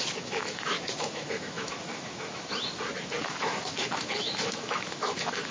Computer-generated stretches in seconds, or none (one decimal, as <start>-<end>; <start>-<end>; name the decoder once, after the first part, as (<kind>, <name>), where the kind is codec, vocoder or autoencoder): 0.0-2.5 (autoencoder, DAC-VAE); 3.2-5.5